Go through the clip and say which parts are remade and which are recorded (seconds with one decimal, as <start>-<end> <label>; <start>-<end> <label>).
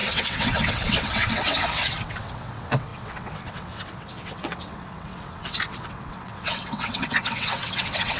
0.0-8.2 remade